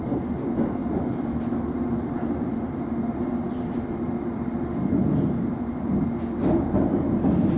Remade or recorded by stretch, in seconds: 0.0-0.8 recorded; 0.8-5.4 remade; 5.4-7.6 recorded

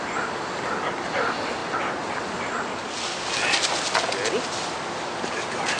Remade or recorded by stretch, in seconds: 0.0-5.8 recorded

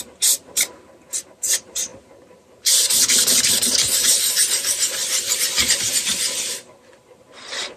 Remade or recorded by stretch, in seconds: 0.0-7.8 remade

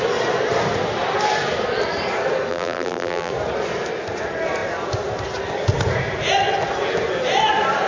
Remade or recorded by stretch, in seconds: 0.0-2.5 recorded; 2.5-3.3 remade; 3.3-7.9 recorded

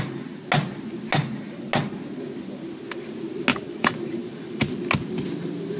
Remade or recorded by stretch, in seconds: 0.0-3.5 recorded; 3.5-4.7 remade; 4.7-5.8 recorded

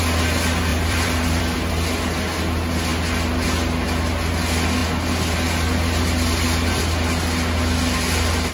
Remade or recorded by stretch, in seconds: 0.0-0.7 recorded; 0.7-1.4 remade; 1.4-8.5 recorded

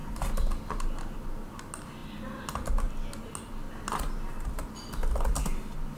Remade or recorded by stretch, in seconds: 0.0-6.0 recorded

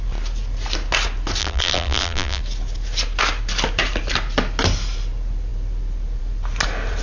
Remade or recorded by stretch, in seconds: 0.0-1.4 recorded; 1.4-2.4 remade; 2.4-7.0 recorded